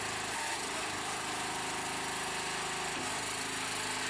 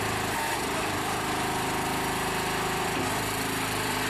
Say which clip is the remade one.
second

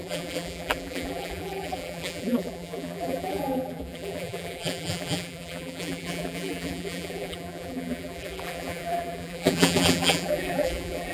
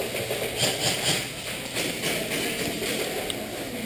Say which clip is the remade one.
first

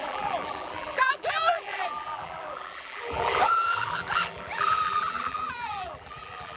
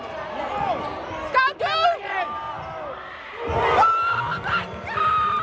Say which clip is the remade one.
first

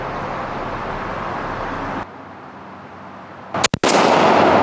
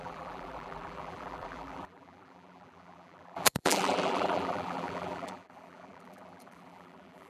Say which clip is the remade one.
second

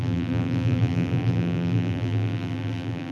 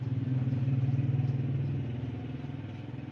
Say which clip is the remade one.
first